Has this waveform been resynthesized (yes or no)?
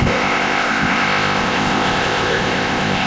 yes